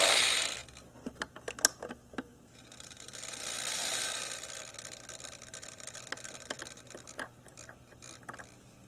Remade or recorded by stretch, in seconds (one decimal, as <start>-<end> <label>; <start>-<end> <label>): 0.0-2.3 recorded; 2.3-5.9 remade; 5.9-8.9 recorded